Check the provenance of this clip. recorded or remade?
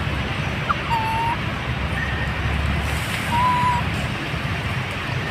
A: recorded